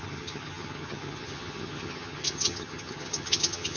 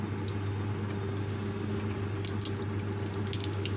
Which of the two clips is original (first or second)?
second